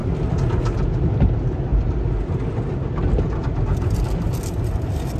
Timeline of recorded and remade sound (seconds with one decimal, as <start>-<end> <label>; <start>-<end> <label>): 0.0-5.2 recorded